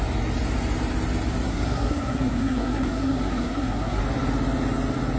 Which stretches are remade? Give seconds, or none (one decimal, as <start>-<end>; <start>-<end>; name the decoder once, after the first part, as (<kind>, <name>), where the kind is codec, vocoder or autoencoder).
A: 1.5-4.0 (codec, SNAC)